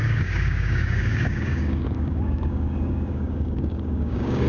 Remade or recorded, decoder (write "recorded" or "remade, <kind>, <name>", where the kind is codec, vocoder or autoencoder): remade, codec, DAC